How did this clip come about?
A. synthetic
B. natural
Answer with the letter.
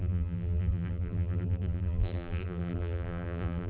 A